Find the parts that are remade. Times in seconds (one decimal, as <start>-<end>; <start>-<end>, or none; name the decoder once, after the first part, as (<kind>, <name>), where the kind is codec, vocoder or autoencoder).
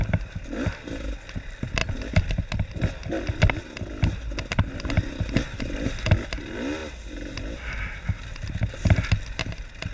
none